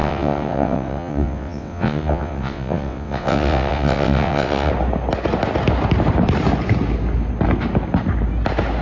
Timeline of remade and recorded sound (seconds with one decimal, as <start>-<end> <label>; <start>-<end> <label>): 0.0-4.7 remade; 4.7-8.8 recorded